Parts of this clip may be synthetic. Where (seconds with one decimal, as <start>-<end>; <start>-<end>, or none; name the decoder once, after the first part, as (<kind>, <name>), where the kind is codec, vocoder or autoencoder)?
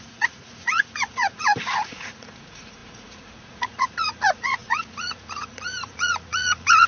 0.0-6.9 (vocoder, Vocos)